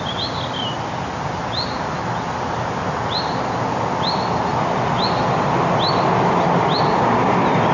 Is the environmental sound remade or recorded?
recorded